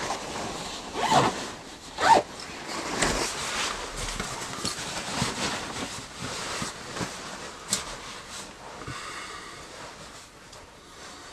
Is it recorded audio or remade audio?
recorded